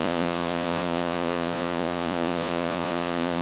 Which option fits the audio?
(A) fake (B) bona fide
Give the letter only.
A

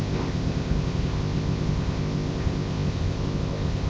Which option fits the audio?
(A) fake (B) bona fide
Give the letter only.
A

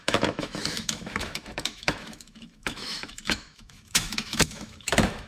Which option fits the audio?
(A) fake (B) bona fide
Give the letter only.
A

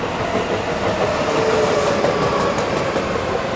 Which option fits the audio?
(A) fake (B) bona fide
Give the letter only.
B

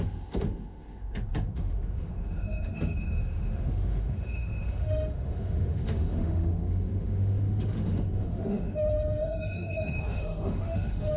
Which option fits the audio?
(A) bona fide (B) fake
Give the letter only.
B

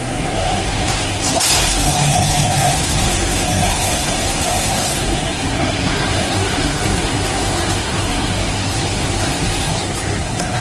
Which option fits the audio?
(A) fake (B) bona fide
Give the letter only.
A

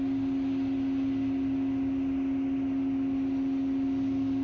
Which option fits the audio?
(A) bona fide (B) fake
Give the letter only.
A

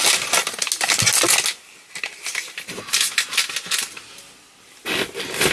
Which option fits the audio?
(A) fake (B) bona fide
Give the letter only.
B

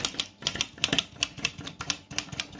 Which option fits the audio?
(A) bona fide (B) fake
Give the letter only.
A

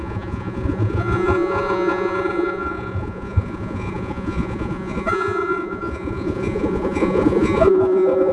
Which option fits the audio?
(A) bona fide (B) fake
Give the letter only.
B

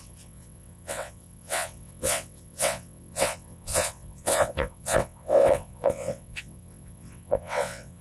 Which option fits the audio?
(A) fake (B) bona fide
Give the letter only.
A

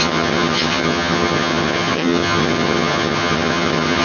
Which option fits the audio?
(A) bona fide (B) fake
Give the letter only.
B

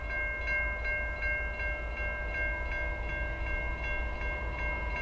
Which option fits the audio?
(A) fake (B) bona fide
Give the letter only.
B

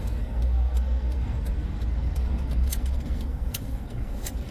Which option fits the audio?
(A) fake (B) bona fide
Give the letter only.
A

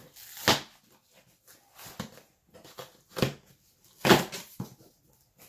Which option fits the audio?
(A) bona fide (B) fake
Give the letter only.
A